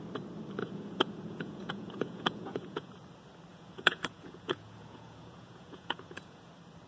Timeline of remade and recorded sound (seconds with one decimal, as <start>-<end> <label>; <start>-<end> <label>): 0.0-0.6 recorded; 0.6-2.9 remade; 2.9-3.5 recorded; 3.5-6.5 remade; 6.5-6.9 recorded